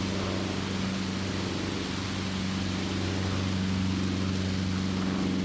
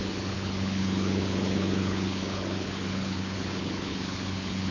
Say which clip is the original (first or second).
first